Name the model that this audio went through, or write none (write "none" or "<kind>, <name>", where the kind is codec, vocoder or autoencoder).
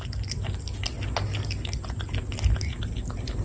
none